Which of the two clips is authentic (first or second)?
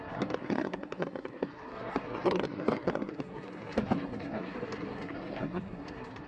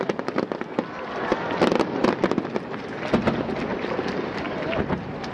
second